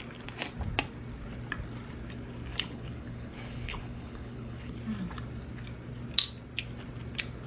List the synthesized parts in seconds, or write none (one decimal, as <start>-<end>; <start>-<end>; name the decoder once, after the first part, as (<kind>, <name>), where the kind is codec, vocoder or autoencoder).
2.5-4.8 (codec, HILCodec)